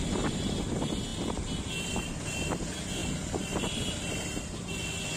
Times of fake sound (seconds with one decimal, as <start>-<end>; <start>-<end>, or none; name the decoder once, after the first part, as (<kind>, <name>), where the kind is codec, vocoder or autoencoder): 3.0-4.1 (vocoder, BigVGAN v2)